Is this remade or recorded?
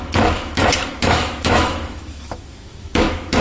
remade